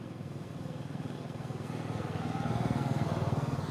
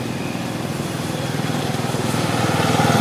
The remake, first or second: first